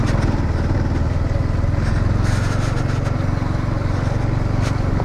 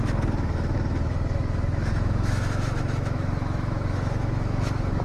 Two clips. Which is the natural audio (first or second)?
first